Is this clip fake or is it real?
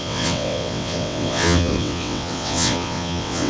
fake